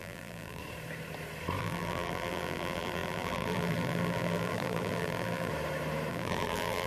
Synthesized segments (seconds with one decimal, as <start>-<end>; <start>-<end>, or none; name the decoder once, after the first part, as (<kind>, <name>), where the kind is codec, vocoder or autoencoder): 0.0-0.6 (vocoder, BigVGAN v2); 1.6-5.5; 6.1-6.9